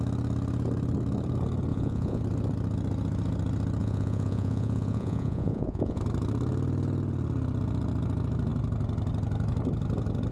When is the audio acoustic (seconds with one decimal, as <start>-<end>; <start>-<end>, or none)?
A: 0.0-1.7; 2.2-3.8; 6.0-10.3